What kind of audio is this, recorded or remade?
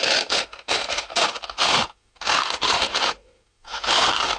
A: remade